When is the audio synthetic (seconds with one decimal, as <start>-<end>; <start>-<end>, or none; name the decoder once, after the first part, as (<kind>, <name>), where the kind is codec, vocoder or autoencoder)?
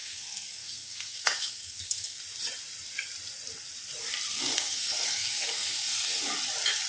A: 0.0-2.2 (codec, SNAC); 4.3-6.2